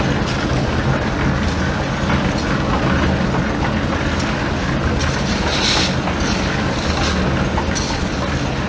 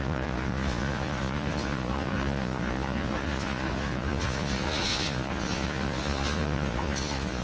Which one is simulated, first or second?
second